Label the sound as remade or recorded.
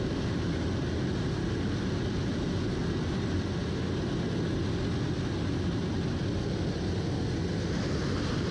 recorded